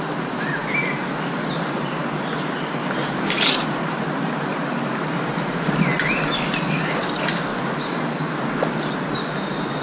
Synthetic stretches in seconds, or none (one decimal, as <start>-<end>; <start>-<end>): 2.8-4.0; 7.5-8.0